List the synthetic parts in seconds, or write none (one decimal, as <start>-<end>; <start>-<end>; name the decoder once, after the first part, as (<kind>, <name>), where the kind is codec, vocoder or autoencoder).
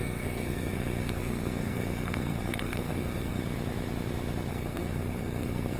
0.0-3.4 (codec, SNAC); 4.5-5.8